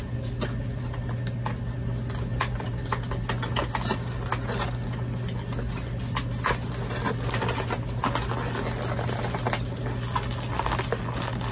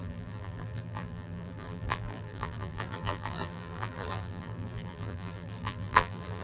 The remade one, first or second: second